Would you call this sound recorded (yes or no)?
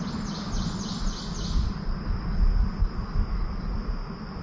yes